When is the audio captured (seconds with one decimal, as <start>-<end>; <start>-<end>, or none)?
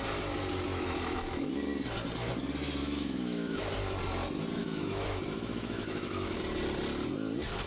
0.0-0.7; 1.5-2.8; 3.7-4.6; 6.4-7.7